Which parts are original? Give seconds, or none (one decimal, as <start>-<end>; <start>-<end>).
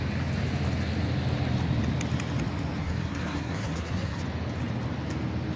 0.0-2.8; 4.2-5.6